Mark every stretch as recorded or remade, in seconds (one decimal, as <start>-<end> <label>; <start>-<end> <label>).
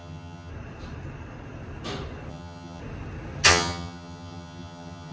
0.0-0.5 remade; 0.5-2.3 recorded; 2.3-2.8 remade; 2.8-3.5 recorded; 3.5-5.1 remade